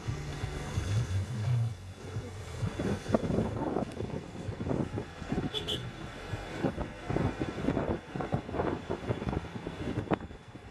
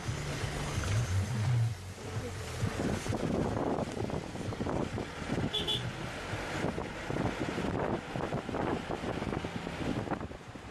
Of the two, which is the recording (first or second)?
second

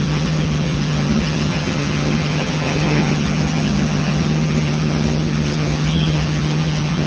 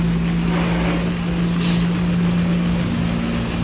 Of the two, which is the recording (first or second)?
second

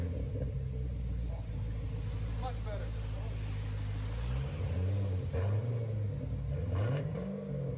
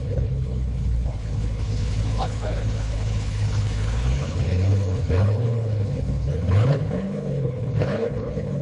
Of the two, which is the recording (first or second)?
first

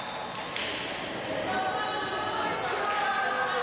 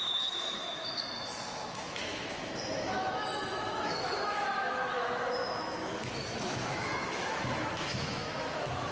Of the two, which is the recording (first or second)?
first